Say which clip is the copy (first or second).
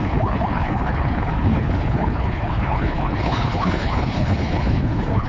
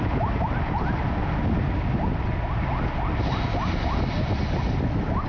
first